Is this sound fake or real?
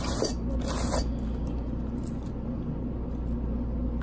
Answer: real